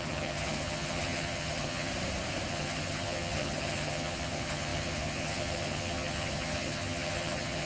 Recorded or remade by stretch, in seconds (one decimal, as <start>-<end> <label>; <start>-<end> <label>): 0.0-1.9 remade; 1.9-2.5 recorded; 2.5-7.7 remade